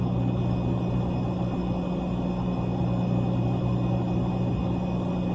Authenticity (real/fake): real